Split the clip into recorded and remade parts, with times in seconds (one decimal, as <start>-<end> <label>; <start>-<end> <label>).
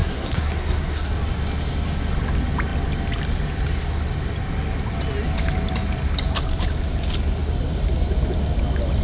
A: 0.0-1.1 remade; 1.1-9.0 recorded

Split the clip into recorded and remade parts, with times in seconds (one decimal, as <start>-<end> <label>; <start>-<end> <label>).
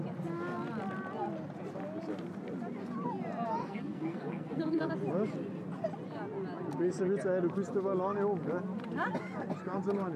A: 0.0-3.6 recorded; 3.6-4.9 remade; 4.9-10.2 recorded